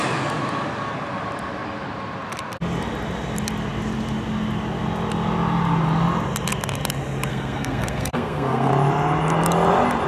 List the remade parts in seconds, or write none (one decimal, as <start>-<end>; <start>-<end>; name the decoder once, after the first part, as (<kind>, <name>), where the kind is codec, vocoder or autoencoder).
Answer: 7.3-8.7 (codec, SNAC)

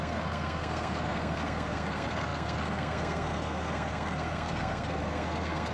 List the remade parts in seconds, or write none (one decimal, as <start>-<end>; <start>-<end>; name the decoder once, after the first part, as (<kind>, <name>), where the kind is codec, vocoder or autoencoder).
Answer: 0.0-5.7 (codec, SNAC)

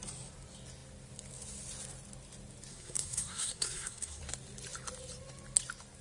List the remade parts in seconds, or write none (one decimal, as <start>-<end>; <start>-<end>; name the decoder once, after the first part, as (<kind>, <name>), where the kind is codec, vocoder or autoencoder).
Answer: 2.7-4.2 (codec, SNAC)

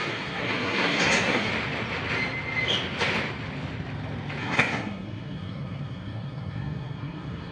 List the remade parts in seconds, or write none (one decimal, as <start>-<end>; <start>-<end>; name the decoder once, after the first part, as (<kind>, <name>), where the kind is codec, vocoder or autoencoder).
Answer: 0.0-1.5 (codec, SNAC); 4.4-7.5

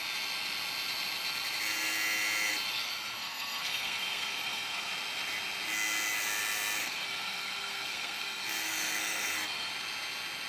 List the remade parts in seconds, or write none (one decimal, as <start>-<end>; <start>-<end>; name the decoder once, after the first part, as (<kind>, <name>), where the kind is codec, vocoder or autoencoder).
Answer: 3.2-4.9 (codec, SNAC); 6.8-9.7